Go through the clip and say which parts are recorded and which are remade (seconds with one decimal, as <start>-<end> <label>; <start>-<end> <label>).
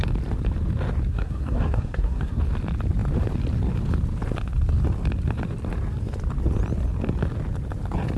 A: 0.0-1.1 recorded; 1.1-2.4 remade; 2.4-8.2 recorded